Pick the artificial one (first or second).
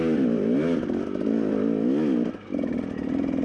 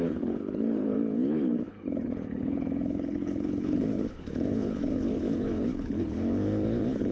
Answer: second